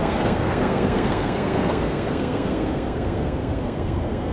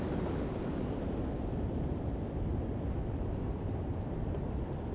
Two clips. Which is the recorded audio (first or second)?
second